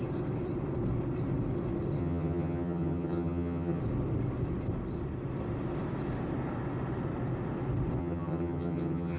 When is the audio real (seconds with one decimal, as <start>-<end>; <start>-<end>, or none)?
0.0-2.0; 3.8-8.0